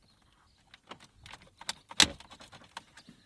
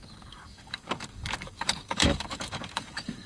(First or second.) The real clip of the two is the first